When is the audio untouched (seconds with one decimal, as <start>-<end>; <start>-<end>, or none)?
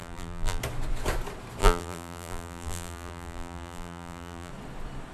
0.6-1.6; 4.5-5.1